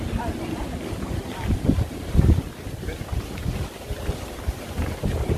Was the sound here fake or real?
real